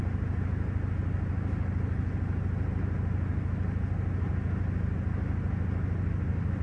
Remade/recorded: recorded